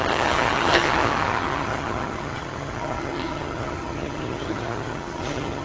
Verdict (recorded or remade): remade